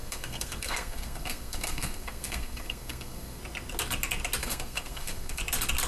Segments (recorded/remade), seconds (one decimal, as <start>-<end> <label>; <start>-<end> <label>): 0.0-3.4 remade; 3.4-4.4 recorded; 4.4-5.4 remade; 5.4-5.9 recorded

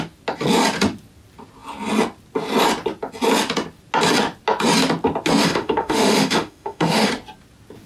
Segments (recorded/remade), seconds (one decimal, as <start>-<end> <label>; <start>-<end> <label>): 0.0-5.4 recorded; 5.4-7.1 remade; 7.1-7.9 recorded

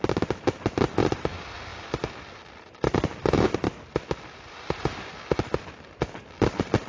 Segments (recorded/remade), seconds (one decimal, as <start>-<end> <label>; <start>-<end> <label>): 0.0-6.9 recorded